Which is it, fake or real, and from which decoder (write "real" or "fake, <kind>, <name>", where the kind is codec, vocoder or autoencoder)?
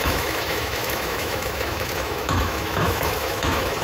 fake, autoencoder, DAC-VAE